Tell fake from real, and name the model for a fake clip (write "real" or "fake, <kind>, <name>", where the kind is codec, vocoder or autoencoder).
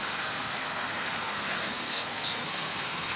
fake, codec, SNAC